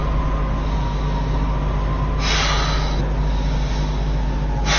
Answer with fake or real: real